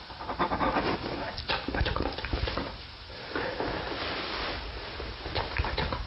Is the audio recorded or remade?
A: recorded